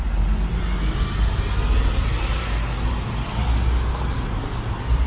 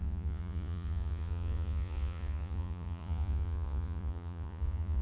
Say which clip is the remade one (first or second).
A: second